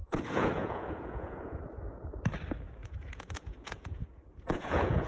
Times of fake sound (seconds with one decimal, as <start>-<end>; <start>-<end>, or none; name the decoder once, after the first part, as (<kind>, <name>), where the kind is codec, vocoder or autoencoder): 0.0-1.6 (vocoder, Vocos); 2.8-5.1